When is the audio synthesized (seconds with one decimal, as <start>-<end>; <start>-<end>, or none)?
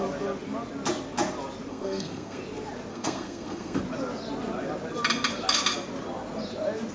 1.7-2.4; 2.9-3.8